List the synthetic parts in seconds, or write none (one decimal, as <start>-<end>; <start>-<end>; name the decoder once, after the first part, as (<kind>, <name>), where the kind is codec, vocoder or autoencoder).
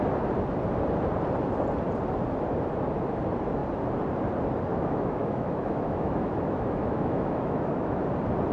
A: 4.7-8.0 (autoencoder, DAC-VAE)